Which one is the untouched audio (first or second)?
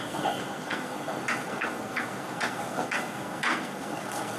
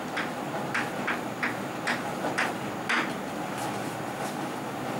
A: second